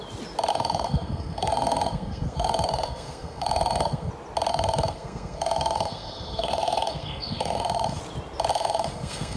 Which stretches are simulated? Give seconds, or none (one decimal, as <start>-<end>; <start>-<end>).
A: 0.5-4.1; 4.5-8.0; 8.5-9.4